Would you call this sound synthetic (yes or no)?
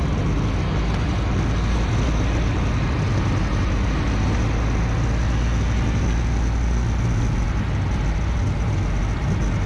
no